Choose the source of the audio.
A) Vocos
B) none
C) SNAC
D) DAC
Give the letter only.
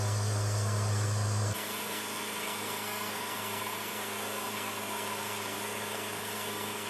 C